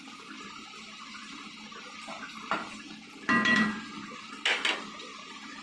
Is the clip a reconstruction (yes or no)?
no